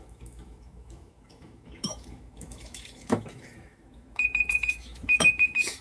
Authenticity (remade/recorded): remade